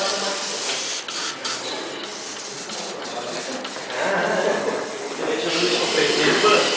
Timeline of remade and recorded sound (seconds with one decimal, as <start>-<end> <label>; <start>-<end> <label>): 0.0-6.8 recorded